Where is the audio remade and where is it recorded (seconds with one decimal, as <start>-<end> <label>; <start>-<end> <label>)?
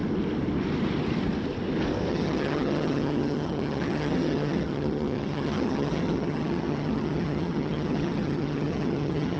0.0-2.1 recorded; 2.1-9.4 remade